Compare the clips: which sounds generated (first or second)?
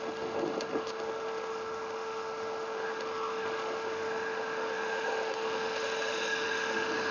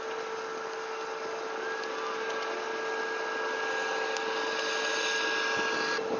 first